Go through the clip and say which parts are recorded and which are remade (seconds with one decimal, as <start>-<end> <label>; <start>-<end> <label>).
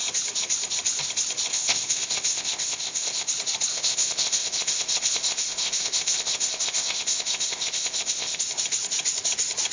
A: 0.0-1.5 recorded; 1.5-3.3 remade; 3.3-3.7 recorded; 3.7-8.4 remade; 8.4-9.7 recorded